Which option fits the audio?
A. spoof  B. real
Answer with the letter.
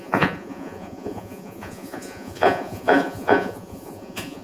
A